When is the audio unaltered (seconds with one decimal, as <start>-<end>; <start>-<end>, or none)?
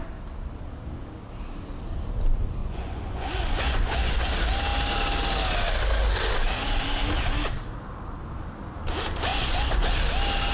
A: 0.0-2.6; 4.3-9.3; 9.9-10.5